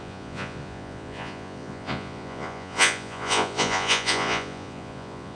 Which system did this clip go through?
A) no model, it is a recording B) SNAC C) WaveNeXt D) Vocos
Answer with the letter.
D